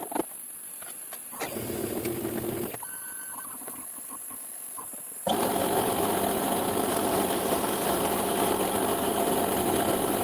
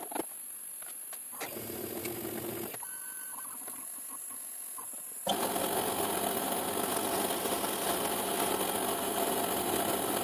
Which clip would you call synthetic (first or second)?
first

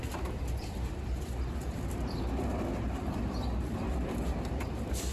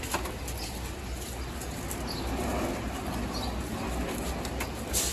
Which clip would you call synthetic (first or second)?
first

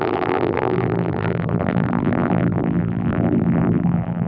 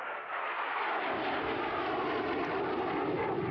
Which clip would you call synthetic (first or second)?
first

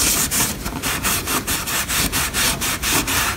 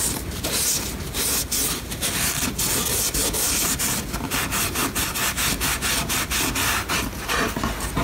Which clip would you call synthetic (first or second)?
first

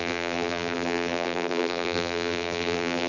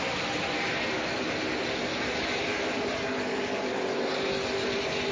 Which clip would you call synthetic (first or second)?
first